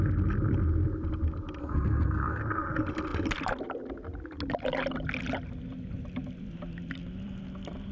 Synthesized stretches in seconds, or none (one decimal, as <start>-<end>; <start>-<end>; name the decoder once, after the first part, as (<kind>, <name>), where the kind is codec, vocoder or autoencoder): 1.6-2.4 (codec, SNAC)